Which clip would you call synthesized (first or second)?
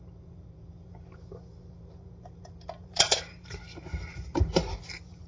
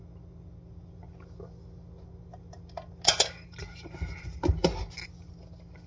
first